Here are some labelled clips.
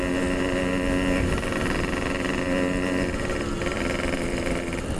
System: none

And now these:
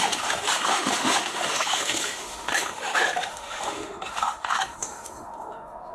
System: autoencoder, DAC-VAE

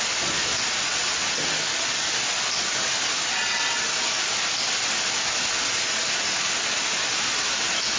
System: none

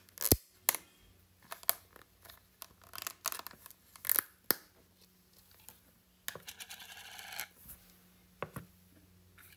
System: none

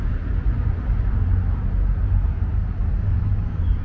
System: none